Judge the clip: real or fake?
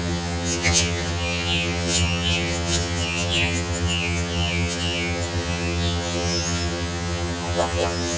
fake